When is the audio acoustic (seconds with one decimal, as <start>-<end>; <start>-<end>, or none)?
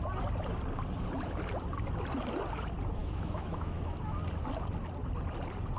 0.0-3.0; 4.0-5.8